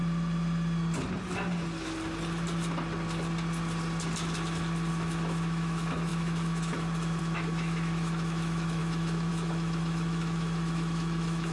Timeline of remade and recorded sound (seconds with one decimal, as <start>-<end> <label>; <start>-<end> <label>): 0.0-4.9 recorded; 4.9-11.5 remade